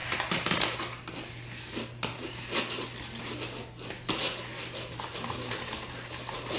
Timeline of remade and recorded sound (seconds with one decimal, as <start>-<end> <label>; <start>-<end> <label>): 0.0-6.6 recorded